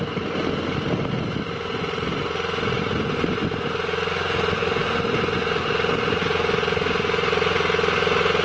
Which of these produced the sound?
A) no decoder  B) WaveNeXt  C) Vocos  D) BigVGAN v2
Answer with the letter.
A